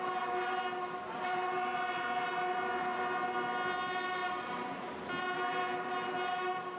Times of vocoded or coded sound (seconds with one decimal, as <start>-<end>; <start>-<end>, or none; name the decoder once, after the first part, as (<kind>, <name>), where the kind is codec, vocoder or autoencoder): none

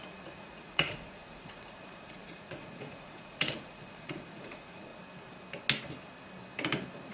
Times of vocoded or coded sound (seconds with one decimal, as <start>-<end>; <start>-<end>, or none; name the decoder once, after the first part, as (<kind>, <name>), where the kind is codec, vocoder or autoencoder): 0.0-4.9 (vocoder, Vocos)

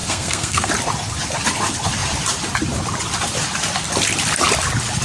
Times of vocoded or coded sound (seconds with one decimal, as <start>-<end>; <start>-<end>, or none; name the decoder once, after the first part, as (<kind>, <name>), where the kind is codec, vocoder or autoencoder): 0.0-0.7 (codec, SNAC)

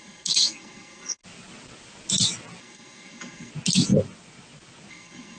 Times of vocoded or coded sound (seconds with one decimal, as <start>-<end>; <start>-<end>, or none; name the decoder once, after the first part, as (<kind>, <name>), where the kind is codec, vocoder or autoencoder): 0.0-1.2 (codec, SNAC); 2.6-3.5; 4.9-5.4

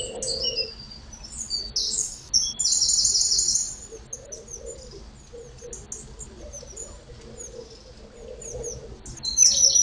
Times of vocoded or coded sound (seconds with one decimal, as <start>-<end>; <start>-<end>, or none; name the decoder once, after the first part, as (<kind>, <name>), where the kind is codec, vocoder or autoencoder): 1.8-2.3 (codec, DAC)

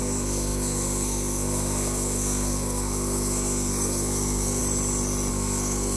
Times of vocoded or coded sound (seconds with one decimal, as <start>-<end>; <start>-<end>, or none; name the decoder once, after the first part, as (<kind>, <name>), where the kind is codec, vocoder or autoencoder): 0.0-4.6 (codec, SNAC); 5.3-6.0

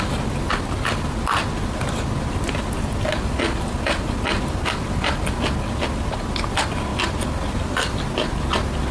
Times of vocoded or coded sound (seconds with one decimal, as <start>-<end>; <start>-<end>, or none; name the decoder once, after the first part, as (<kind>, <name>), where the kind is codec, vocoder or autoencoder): none